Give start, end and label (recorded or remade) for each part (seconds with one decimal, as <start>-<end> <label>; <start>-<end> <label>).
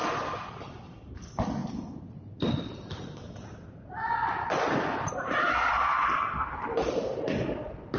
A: 0.0-8.0 recorded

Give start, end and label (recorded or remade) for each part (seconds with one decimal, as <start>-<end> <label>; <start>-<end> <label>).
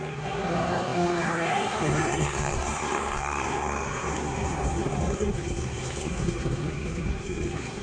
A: 0.0-7.8 remade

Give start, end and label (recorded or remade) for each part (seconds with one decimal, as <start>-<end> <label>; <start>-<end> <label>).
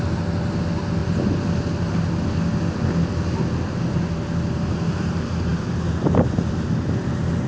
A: 0.0-7.5 recorded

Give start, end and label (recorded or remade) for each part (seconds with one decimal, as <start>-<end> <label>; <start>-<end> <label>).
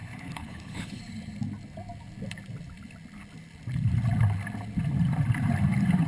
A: 0.0-1.0 remade; 1.0-6.1 recorded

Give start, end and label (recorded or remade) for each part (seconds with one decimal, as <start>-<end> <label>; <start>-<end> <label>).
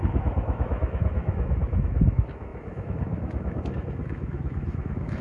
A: 0.0-5.2 remade